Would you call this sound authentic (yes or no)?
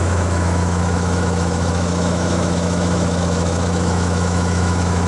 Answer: no